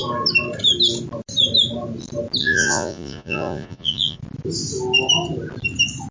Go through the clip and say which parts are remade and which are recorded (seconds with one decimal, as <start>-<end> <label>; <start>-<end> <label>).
0.0-2.4 recorded; 2.4-4.2 remade; 4.2-6.1 recorded